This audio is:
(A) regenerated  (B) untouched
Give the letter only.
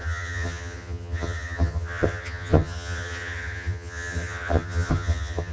A